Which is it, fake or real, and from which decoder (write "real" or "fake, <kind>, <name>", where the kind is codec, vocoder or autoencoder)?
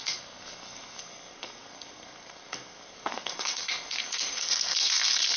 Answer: fake, codec, SNAC